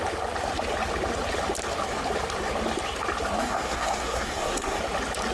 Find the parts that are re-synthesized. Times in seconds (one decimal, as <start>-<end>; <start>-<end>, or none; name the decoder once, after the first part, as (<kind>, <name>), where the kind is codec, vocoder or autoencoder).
3.4-4.8 (codec, SNAC)